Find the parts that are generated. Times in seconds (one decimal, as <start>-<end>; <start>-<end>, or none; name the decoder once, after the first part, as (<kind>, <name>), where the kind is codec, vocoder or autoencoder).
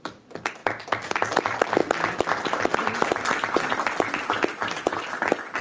none